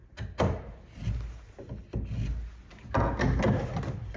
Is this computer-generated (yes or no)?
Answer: no